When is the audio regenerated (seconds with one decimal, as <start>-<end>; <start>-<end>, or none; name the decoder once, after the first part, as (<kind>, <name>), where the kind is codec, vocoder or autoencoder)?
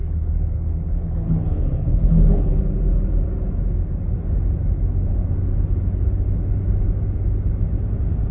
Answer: 0.0-2.6 (codec, HILCodec)